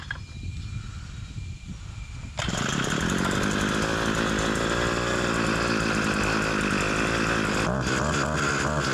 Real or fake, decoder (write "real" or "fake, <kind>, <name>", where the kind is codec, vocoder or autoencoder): real